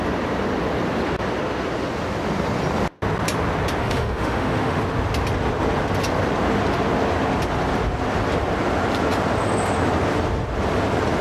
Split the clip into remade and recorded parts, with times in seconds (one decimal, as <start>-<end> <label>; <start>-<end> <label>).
0.0-3.8 recorded; 3.8-4.8 remade; 4.8-11.2 recorded

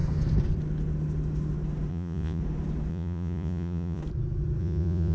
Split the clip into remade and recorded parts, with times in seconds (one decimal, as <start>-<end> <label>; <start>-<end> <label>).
0.0-1.9 recorded; 1.9-2.4 remade; 2.4-2.9 recorded; 2.9-4.0 remade; 4.0-4.6 recorded; 4.6-5.1 remade

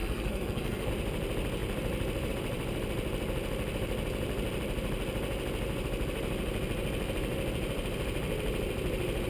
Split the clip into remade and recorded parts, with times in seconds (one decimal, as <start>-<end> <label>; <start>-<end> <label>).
0.0-0.9 remade; 0.9-9.3 recorded